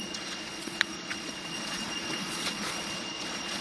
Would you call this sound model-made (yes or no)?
yes